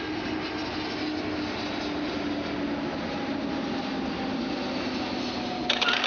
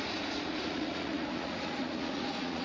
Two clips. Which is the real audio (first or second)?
first